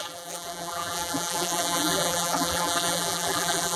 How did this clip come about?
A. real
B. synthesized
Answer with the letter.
B